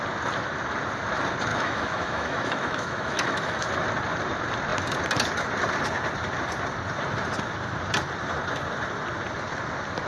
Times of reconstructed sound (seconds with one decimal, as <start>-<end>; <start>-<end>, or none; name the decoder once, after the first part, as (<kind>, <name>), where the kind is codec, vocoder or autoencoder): 1.5-3.7 (autoencoder, DAC-VAE)

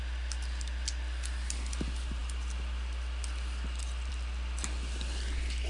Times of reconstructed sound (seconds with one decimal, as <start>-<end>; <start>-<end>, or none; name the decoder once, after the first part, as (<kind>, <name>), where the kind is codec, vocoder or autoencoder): none